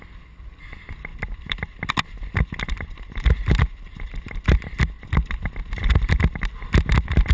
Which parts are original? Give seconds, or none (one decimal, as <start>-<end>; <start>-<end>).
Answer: 0.0-7.3